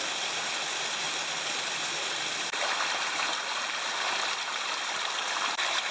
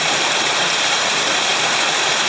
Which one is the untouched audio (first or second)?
first